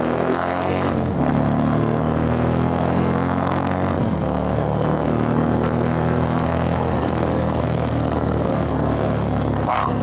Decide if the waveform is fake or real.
fake